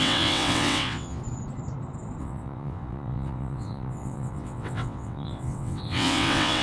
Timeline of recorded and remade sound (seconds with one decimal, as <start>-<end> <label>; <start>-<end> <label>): 0.0-1.2 remade; 1.2-2.2 recorded; 2.2-6.6 remade